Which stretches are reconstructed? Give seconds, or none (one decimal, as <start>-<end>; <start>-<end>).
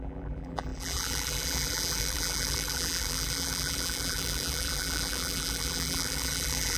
0.0-6.8